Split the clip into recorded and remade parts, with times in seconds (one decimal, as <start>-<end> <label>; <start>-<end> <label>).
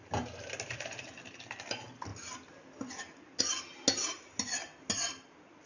0.0-5.7 recorded